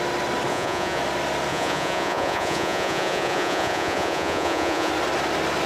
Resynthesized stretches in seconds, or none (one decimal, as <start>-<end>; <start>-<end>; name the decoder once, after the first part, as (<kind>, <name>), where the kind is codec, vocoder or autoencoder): 0.5-1.0 (vocoder, Vocos); 1.5-4.9